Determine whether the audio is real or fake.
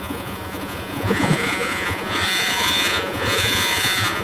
fake